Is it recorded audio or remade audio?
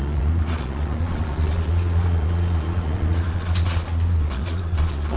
remade